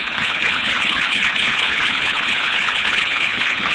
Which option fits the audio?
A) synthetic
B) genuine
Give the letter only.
A